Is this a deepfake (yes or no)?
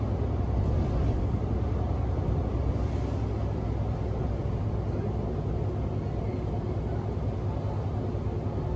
no